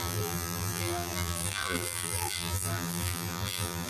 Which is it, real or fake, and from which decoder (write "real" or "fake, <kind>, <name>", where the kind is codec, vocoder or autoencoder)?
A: fake, vocoder, BigVGAN v2